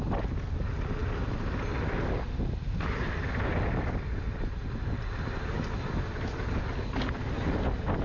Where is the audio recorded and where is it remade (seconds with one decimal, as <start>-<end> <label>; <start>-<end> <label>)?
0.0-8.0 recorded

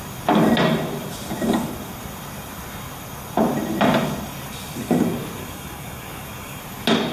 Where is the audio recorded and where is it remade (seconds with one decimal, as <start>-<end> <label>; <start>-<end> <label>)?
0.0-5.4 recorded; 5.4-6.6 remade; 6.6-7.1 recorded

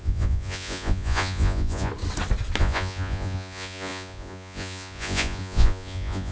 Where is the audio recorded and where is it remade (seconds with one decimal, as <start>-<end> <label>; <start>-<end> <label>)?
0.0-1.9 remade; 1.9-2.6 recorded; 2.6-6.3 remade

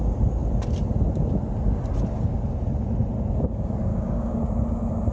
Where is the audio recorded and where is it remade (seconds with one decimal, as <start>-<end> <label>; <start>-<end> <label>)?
0.0-3.9 recorded; 3.9-4.4 remade; 4.4-5.1 recorded

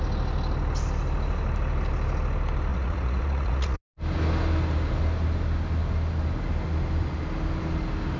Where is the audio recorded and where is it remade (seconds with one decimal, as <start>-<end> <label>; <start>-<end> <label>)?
0.0-2.7 recorded; 2.7-3.8 remade; 3.8-8.2 recorded

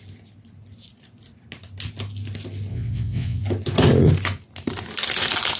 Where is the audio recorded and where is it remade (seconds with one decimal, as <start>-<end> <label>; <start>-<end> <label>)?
0.0-2.7 recorded; 2.7-3.4 remade; 3.4-5.6 recorded